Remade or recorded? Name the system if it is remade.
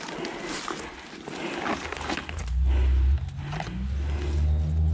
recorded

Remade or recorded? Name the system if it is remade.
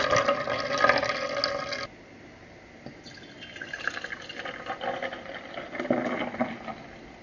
recorded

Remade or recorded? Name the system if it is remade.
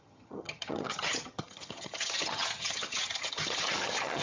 remade, vocoder, HiFi-GAN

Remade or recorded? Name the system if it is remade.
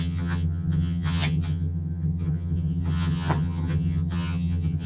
remade, vocoder, HiFi-GAN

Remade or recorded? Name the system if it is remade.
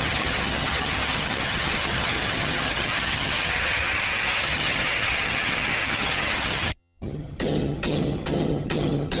remade, vocoder, HiFi-GAN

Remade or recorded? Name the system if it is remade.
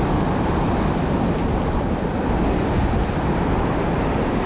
recorded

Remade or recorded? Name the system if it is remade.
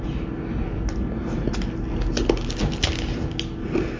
recorded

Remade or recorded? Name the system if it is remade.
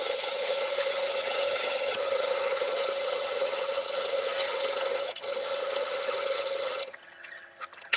remade, vocoder, HiFi-GAN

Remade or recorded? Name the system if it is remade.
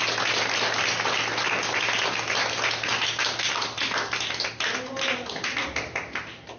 recorded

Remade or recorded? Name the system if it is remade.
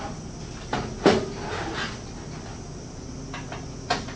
recorded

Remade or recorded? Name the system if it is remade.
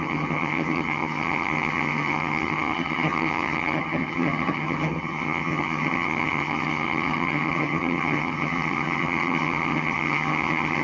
remade, vocoder, HiFi-GAN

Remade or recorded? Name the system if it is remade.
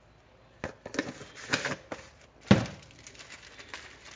recorded